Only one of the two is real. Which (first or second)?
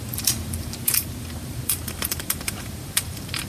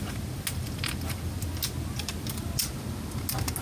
second